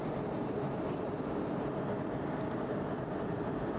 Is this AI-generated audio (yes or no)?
no